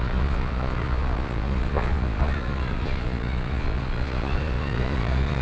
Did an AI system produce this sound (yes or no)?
yes